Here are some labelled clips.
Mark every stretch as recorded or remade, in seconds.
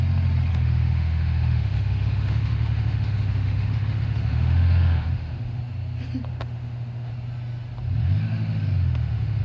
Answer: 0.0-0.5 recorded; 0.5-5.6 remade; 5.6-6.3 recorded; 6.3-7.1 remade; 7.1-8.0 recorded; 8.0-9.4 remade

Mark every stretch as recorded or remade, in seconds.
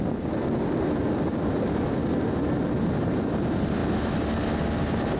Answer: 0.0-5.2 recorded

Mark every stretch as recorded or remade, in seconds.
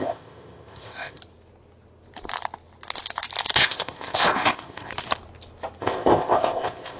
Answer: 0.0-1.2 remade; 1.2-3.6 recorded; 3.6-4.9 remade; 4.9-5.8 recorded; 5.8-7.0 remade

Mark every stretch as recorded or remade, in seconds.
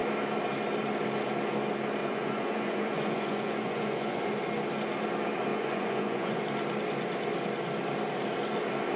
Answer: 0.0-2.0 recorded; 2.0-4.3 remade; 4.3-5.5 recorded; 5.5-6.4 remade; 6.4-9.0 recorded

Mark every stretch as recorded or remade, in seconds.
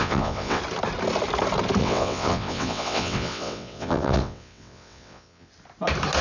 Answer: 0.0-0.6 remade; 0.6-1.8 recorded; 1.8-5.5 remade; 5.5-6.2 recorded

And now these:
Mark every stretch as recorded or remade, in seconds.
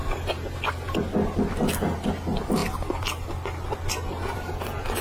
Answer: 0.0-5.0 recorded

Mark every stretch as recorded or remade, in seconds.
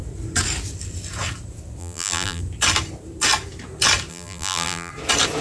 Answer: 0.0-1.8 recorded; 1.8-2.4 remade; 2.4-4.1 recorded; 4.1-4.9 remade; 4.9-5.4 recorded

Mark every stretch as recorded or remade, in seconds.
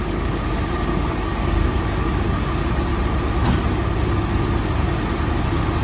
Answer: 0.0-2.9 remade; 2.9-5.8 recorded